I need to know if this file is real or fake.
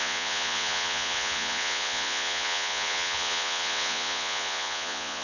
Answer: fake